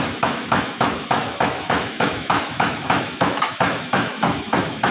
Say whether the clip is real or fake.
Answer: fake